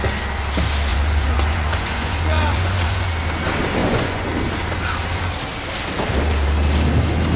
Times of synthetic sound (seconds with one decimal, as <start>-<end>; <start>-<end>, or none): 0.9-3.1; 3.8-4.3